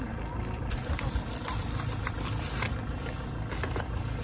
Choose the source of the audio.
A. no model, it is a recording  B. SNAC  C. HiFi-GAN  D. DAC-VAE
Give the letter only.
A